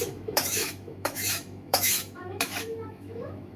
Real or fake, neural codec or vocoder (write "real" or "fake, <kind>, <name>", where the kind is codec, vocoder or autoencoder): fake, autoencoder, DAC-VAE